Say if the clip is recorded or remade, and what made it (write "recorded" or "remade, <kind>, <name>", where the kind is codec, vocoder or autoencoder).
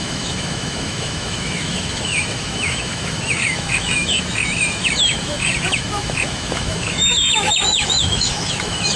remade, autoencoder, DAC-VAE